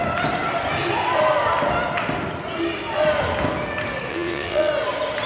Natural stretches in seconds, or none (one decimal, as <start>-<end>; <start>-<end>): 0.0-4.1; 4.7-5.3